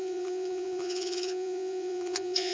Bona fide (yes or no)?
no